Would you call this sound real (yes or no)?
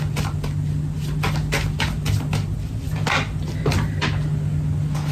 yes